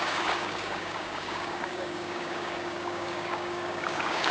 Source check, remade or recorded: remade